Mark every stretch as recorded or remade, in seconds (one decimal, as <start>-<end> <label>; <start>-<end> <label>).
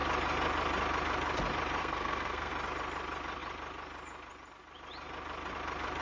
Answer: 0.0-1.8 recorded; 1.8-2.5 remade; 2.5-6.0 recorded